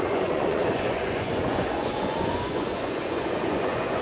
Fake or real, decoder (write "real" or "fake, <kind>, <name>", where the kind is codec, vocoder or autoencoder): fake, vocoder, Vocos